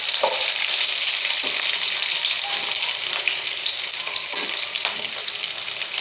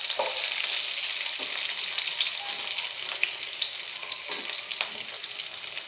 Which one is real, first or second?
second